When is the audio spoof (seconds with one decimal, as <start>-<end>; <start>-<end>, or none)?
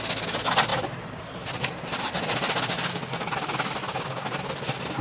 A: 0.7-1.7